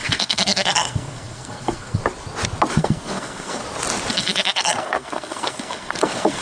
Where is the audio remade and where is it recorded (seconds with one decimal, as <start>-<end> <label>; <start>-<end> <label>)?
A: 0.0-2.0 remade; 2.0-2.7 recorded; 2.7-3.6 remade; 3.6-4.1 recorded; 4.1-6.4 remade